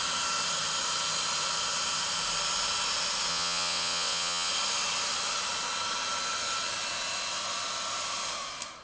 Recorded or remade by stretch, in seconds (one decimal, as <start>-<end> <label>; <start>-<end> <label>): 0.0-3.3 recorded; 3.3-4.5 remade; 4.5-8.8 recorded